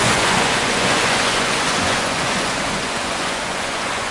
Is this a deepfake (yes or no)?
yes